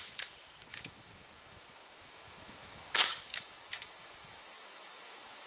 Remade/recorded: remade